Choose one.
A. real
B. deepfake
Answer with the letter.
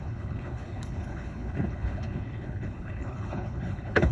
B